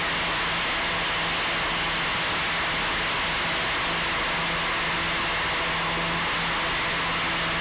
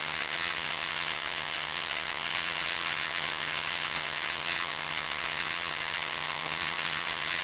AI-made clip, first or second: second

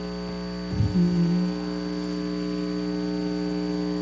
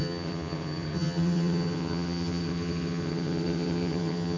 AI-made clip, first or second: second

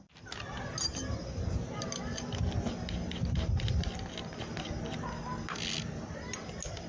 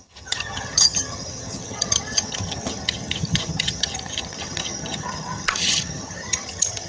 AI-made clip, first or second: second